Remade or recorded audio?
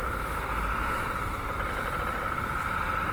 recorded